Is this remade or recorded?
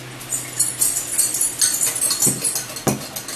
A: recorded